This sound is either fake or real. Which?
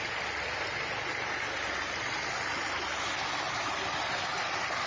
real